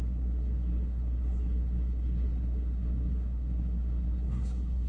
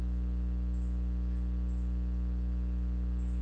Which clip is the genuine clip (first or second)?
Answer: second